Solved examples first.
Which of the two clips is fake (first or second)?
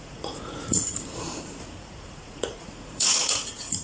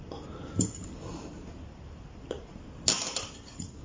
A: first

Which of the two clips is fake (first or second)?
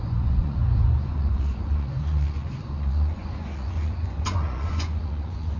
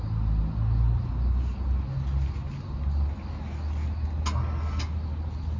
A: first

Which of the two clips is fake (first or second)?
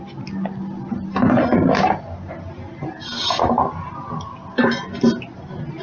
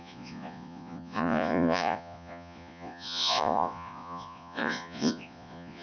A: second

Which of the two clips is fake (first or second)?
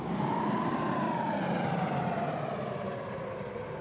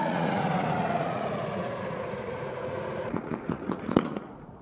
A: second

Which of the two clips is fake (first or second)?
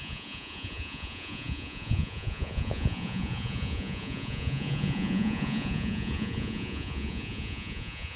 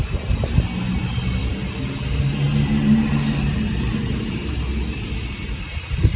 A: first